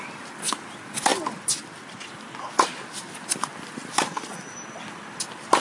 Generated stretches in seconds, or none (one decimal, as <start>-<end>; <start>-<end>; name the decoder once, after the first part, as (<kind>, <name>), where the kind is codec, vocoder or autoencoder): none